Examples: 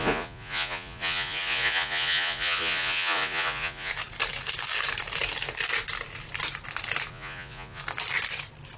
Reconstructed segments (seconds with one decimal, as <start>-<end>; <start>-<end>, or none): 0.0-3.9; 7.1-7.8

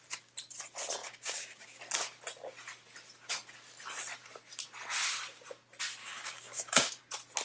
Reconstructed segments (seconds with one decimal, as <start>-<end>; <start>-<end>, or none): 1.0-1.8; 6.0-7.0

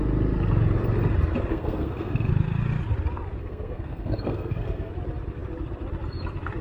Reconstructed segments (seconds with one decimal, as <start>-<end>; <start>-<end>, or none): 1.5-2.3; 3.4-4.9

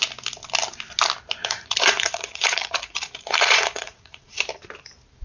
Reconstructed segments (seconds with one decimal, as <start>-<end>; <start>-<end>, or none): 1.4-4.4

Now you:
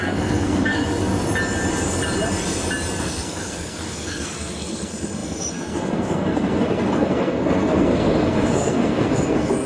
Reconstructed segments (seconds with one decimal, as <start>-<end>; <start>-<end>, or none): 0.0-1.1; 3.0-9.7